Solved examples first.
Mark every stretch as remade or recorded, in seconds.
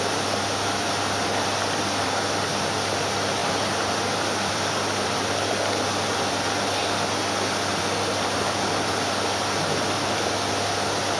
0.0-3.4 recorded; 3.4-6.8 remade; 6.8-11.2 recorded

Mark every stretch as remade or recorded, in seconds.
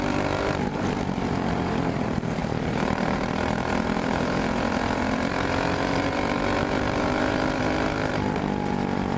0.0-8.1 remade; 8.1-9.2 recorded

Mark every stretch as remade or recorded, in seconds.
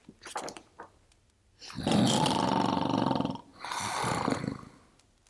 0.0-5.3 recorded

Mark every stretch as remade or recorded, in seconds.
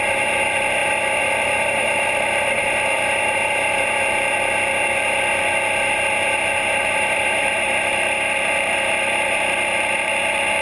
0.0-0.8 recorded; 0.8-3.6 remade; 3.6-6.8 recorded; 6.8-10.1 remade; 10.1-10.6 recorded